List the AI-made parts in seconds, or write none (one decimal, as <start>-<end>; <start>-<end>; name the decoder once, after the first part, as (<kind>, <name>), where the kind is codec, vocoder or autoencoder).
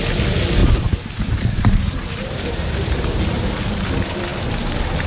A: 0.6-3.7 (vocoder, BigVGAN v2)